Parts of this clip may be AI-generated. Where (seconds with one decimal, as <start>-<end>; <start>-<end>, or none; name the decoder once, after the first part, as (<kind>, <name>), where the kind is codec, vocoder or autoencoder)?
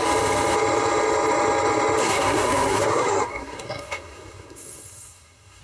2.0-5.6 (codec, SNAC)